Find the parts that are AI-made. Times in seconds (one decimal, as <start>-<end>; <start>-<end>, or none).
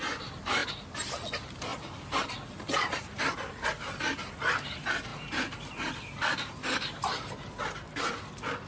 none